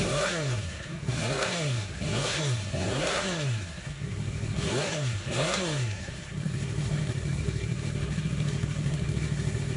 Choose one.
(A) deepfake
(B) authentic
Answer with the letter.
A